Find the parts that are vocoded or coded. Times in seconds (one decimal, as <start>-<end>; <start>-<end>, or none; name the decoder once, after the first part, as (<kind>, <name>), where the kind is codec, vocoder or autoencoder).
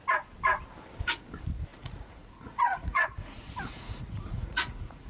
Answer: 1.7-5.1 (vocoder, Vocos)